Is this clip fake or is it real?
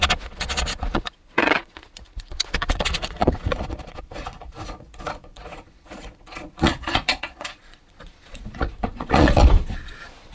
fake